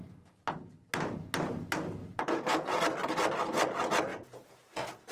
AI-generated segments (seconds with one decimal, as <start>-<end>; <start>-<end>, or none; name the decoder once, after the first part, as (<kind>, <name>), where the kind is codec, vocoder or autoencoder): 2.0-2.8 (vocoder, Vocos); 4.1-5.1